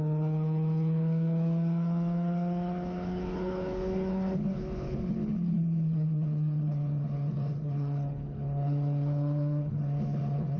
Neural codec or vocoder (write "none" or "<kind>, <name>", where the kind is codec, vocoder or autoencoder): codec, HILCodec